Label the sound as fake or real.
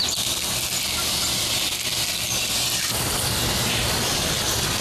real